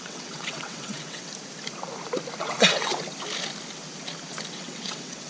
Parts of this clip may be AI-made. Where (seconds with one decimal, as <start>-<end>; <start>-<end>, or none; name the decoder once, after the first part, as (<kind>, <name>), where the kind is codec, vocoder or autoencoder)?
0.0-1.3 (vocoder, WaveNeXt); 2.4-2.9; 4.5-5.3